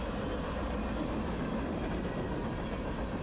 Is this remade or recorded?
recorded